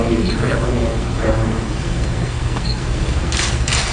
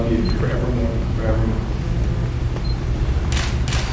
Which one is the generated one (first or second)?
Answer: first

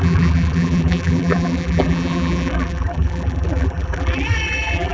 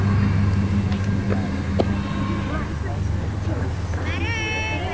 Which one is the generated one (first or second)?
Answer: first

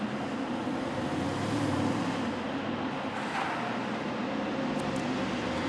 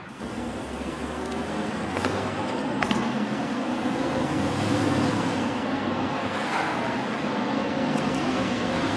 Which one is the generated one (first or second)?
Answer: second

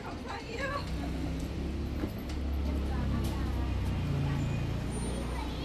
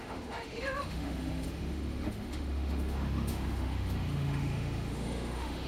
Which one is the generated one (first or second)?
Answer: second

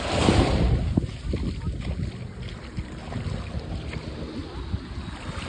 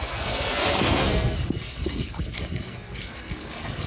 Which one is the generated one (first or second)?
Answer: second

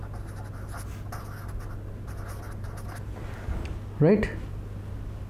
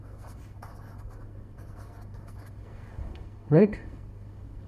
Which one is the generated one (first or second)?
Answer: second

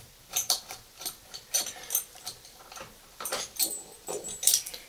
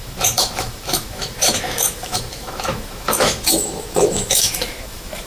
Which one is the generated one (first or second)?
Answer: second